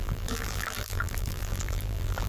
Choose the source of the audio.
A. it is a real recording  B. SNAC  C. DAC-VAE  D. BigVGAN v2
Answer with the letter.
D